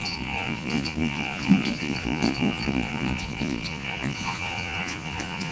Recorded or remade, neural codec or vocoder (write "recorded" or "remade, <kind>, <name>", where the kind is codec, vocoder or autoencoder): remade, vocoder, Vocos